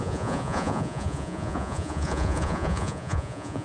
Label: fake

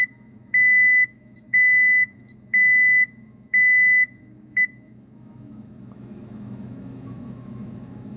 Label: fake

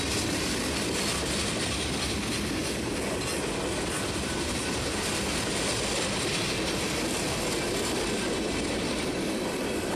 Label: real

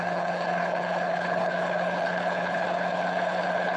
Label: fake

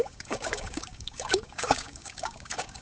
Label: fake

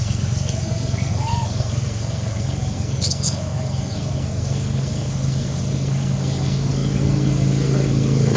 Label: fake